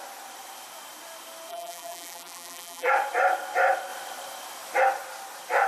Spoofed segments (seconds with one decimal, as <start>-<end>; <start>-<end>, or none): 1.5-2.9